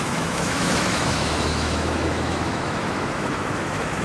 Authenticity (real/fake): fake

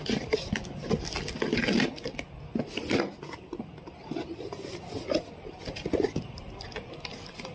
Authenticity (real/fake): real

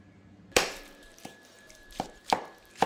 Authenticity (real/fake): fake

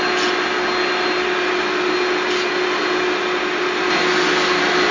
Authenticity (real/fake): real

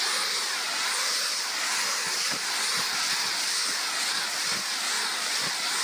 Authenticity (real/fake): real